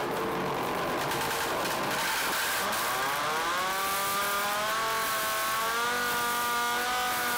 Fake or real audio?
real